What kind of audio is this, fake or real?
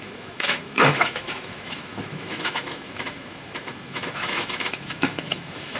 fake